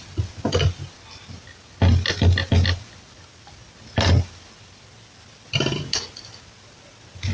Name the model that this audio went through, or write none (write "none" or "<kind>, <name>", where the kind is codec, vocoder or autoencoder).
none